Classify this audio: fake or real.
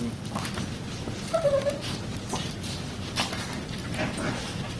real